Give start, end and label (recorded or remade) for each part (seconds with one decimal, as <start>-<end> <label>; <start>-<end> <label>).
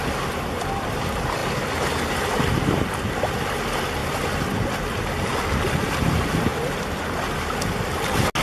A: 0.0-8.4 recorded